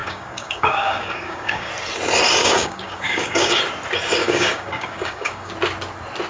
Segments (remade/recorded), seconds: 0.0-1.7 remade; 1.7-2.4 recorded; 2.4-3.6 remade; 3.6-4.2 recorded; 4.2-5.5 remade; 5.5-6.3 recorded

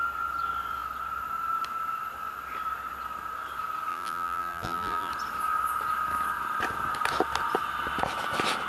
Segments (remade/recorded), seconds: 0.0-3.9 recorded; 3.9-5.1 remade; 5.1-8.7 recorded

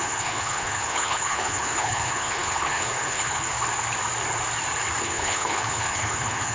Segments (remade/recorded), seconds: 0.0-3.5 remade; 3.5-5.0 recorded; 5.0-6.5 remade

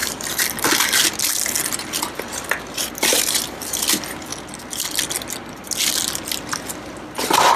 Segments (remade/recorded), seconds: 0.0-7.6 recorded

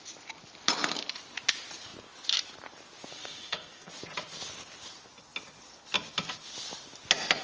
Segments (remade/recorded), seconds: 0.0-3.1 recorded; 3.1-3.9 remade; 3.9-7.4 recorded